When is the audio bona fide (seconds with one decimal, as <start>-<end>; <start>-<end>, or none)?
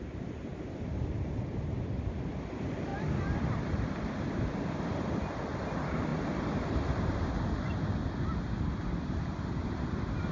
0.0-2.9; 4.4-10.3